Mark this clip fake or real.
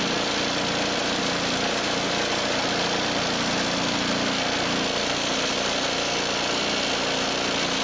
real